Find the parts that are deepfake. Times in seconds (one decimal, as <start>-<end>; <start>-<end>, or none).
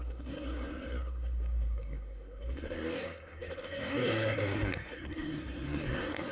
0.0-6.3